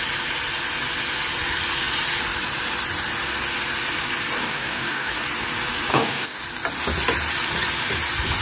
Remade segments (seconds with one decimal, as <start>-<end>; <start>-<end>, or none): 4.4-5.2; 5.9-6.4